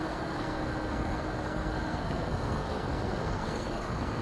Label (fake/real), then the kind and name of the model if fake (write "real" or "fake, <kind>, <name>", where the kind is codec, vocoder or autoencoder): fake, codec, SNAC